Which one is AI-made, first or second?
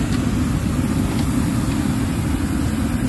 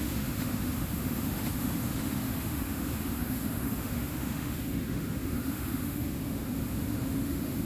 second